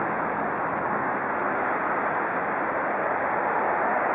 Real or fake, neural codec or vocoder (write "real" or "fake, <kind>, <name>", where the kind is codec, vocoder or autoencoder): real